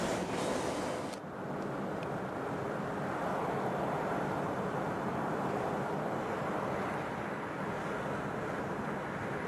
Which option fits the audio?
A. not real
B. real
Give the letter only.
B